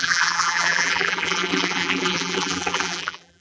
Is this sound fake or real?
fake